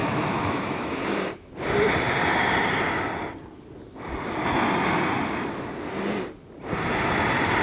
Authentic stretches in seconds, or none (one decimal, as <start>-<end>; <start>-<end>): 1.3-7.6